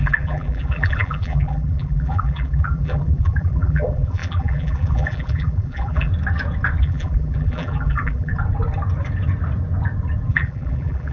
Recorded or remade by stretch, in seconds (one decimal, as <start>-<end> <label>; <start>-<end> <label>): 0.0-6.1 remade; 6.1-6.8 recorded; 6.8-8.3 remade; 8.3-10.3 recorded; 10.3-11.1 remade